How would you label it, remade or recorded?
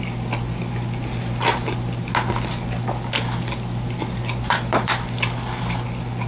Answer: recorded